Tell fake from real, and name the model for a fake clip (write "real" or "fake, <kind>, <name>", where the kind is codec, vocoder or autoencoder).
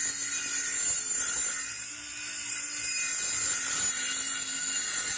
real